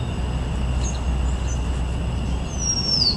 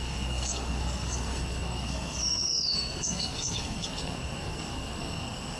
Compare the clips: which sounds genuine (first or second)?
first